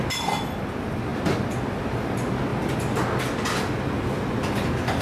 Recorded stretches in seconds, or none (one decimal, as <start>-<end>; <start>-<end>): 0.0-5.0